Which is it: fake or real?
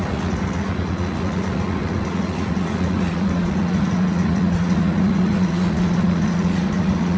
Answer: fake